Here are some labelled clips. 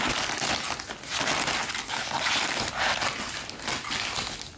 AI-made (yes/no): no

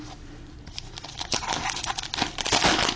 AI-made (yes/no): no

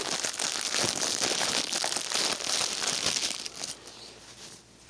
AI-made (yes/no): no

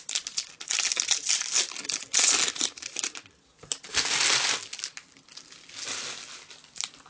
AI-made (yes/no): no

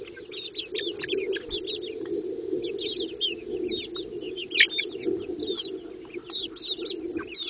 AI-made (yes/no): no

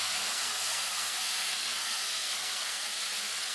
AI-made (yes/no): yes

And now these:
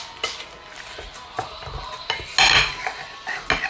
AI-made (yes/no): no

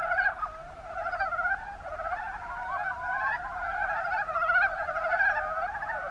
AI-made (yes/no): no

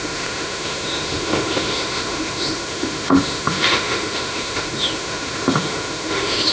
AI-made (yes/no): yes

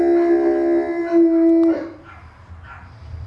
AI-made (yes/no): no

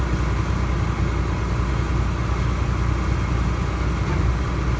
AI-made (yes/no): no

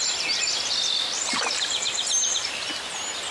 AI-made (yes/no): no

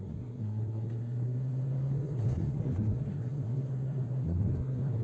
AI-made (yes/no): yes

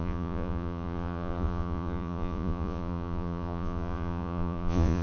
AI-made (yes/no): yes